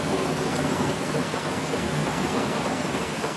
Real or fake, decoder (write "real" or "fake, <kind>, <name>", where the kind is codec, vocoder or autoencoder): fake, codec, SNAC